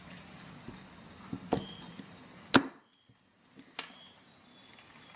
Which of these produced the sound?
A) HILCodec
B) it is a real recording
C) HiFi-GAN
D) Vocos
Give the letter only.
B